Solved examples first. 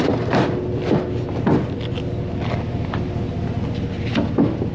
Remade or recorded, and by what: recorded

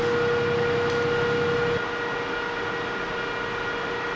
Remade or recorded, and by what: recorded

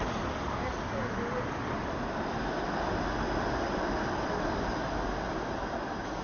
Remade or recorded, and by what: recorded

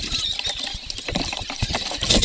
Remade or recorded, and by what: recorded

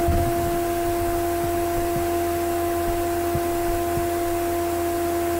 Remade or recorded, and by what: recorded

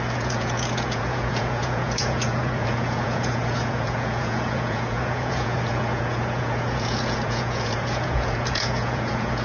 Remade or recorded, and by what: remade, vocoder, Vocos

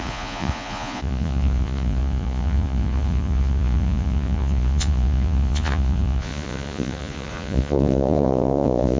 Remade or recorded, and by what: remade, vocoder, Vocos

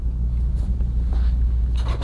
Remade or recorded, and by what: recorded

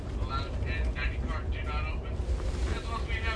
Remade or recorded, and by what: remade, vocoder, BigVGAN v2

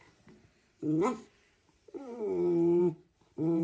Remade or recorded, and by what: remade, vocoder, BigVGAN v2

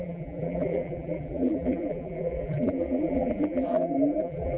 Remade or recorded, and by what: remade, vocoder, BigVGAN v2